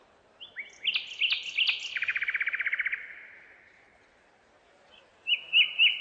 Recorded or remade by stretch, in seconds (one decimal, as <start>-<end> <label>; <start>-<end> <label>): 0.0-6.0 recorded